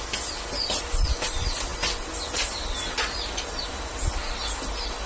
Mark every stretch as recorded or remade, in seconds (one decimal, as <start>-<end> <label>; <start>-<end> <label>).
0.0-5.1 recorded